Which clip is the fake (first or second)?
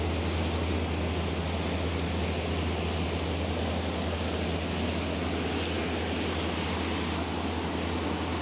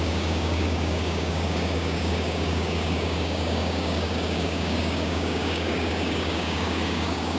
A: second